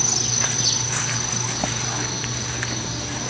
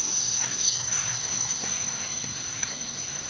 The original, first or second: first